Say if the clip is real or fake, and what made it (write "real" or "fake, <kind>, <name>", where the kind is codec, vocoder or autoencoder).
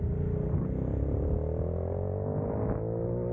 real